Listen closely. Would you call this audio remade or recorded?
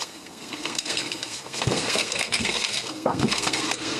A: remade